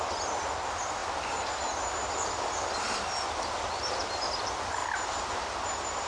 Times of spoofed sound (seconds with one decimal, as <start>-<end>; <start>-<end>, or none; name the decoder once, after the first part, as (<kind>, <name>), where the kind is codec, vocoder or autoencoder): none